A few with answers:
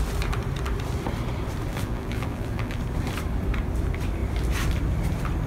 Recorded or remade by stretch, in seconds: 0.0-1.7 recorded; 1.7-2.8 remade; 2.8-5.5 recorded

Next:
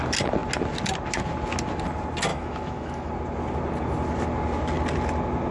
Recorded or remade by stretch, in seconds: 0.0-2.3 recorded; 2.3-3.1 remade; 3.1-5.5 recorded

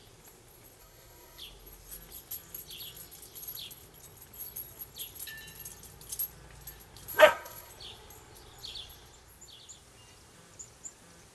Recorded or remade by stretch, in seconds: 0.0-0.8 recorded; 0.8-1.4 remade; 1.4-7.1 recorded; 7.1-7.7 remade; 7.7-11.3 recorded

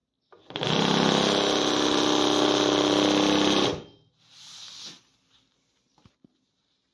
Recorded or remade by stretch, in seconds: 0.0-6.9 recorded

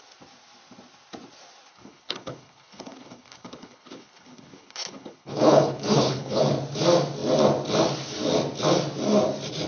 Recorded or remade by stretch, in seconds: 0.0-1.7 recorded; 1.7-6.4 remade; 6.4-9.7 recorded

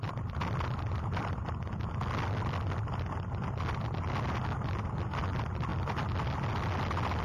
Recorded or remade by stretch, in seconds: 0.0-7.2 recorded

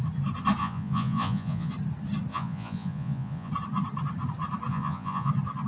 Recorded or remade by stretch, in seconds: 0.0-0.6 recorded; 0.6-1.7 remade; 1.7-2.3 recorded; 2.3-3.5 remade; 3.5-4.7 recorded; 4.7-5.3 remade; 5.3-5.7 recorded